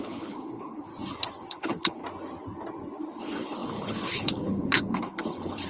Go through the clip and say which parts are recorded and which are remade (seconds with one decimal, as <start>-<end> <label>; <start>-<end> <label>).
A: 0.0-0.9 remade; 0.9-1.5 recorded; 1.5-2.0 remade; 2.0-3.2 recorded; 3.2-5.7 remade